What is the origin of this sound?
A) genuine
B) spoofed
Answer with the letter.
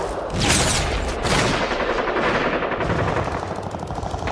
A